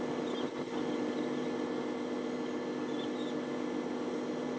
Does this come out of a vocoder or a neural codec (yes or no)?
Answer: no